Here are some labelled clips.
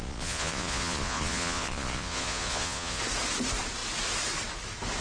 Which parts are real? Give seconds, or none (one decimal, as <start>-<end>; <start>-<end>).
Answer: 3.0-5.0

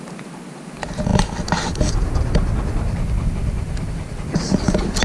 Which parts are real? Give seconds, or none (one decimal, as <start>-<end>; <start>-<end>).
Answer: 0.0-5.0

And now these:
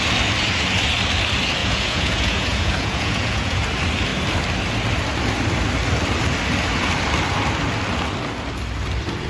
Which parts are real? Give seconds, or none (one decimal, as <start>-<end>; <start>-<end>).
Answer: 0.0-1.6; 3.6-9.3

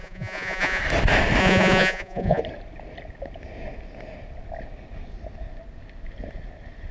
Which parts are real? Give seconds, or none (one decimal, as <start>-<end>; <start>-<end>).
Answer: 0.8-1.4; 2.4-6.9

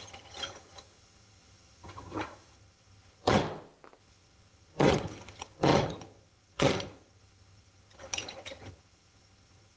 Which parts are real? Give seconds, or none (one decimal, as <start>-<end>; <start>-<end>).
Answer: 3.4-4.0